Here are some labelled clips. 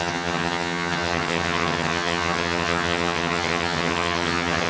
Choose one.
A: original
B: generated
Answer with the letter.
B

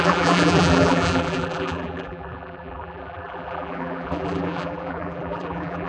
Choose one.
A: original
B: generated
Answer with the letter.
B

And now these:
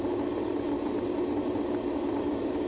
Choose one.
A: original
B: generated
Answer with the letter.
A